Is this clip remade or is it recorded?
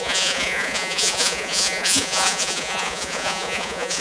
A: remade